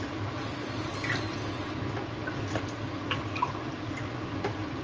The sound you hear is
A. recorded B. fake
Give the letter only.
A